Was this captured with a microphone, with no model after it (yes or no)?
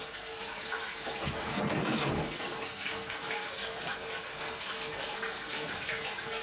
no